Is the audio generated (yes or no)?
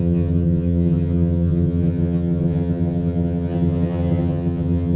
yes